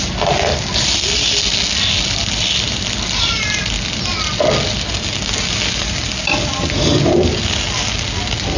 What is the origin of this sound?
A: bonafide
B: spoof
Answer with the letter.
A